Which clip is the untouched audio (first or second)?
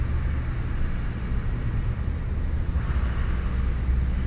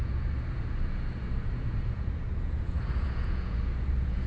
first